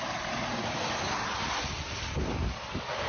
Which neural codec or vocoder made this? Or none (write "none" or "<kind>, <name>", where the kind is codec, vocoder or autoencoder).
none